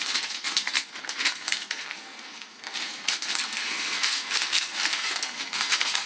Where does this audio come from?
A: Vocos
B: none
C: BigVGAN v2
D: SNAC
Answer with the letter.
D